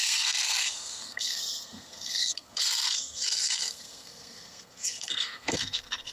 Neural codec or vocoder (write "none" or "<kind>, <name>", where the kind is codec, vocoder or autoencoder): codec, SNAC